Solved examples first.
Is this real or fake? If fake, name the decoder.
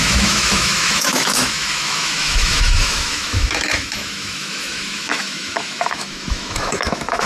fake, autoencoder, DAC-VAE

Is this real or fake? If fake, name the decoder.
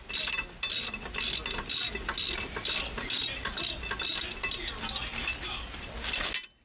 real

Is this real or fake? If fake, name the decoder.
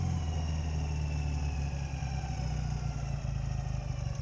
real